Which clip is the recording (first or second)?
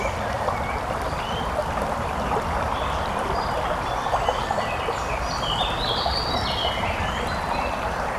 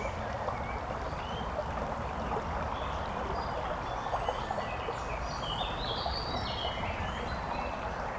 second